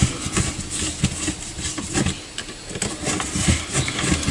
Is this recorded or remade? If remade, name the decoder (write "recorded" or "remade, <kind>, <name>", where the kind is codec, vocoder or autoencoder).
recorded